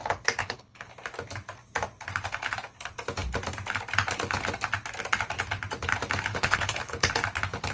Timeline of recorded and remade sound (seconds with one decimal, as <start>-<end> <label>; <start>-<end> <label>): 0.0-0.4 recorded; 0.4-0.9 remade; 0.9-6.3 recorded; 6.3-7.1 remade; 7.1-7.7 recorded